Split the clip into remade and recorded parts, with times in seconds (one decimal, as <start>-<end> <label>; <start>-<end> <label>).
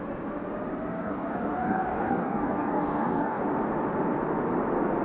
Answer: 0.0-0.9 recorded; 0.9-3.4 remade; 3.4-5.0 recorded